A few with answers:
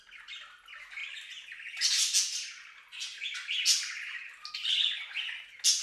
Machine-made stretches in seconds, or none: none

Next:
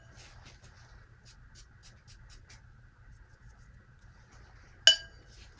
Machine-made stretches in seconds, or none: none

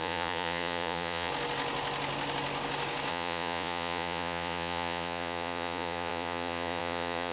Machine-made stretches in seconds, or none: 0.0-1.3 (vocoder, Vocos); 3.1-7.3

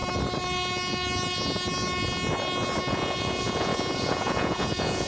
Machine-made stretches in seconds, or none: 2.9-5.1 (vocoder, Vocos)